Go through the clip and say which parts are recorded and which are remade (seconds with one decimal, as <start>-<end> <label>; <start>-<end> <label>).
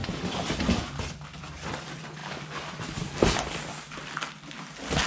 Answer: 0.0-5.1 recorded